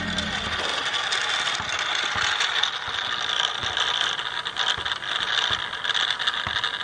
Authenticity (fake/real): real